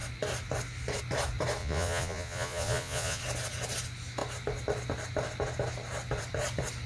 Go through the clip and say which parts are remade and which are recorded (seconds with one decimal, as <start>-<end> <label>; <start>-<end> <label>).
0.0-1.6 recorded; 1.6-3.2 remade; 3.2-6.9 recorded